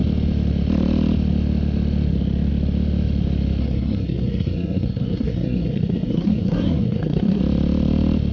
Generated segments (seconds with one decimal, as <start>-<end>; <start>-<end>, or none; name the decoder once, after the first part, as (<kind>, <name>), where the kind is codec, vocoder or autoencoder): 3.6-7.4 (codec, SNAC)